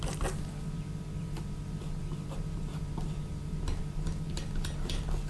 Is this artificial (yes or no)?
no